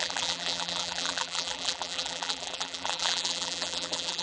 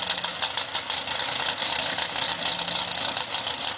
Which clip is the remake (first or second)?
first